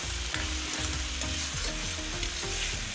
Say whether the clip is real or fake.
real